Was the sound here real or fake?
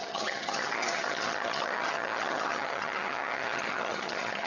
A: fake